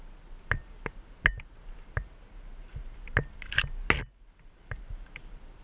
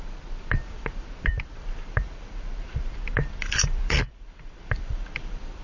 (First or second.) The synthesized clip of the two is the second